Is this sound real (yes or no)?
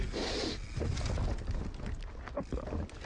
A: yes